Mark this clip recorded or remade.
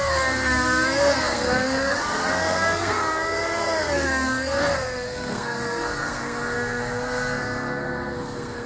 remade